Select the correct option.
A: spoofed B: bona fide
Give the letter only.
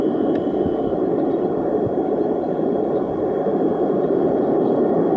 A